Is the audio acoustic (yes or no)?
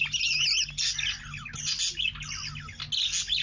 yes